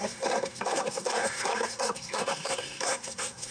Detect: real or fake fake